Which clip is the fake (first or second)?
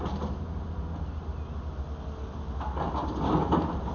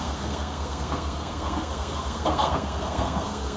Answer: second